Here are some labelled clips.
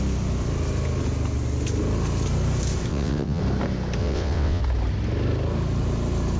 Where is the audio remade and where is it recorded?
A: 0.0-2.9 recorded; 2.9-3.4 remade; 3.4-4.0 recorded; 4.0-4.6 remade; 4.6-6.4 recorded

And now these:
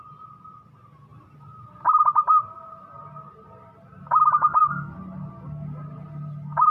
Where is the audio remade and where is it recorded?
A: 0.0-6.7 recorded

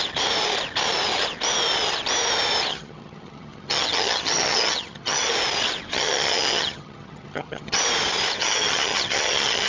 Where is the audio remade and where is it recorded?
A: 0.0-2.7 recorded; 2.7-5.3 remade; 5.3-5.9 recorded; 5.9-7.8 remade; 7.8-8.4 recorded; 8.4-9.7 remade

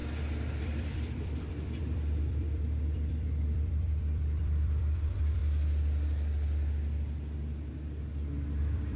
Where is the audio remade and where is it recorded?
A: 0.0-0.6 recorded; 0.6-5.4 remade; 5.4-8.6 recorded; 8.6-9.0 remade

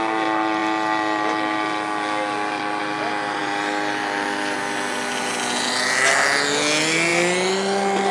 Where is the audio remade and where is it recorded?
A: 0.0-8.1 recorded

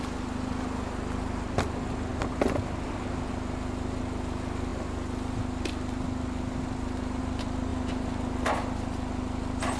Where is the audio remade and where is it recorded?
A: 0.0-9.8 recorded

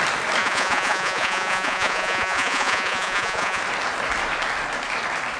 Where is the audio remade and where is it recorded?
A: 0.0-0.4 recorded; 0.4-3.6 remade; 3.6-5.4 recorded

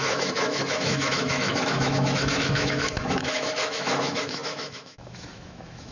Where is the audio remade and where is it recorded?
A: 0.0-5.9 remade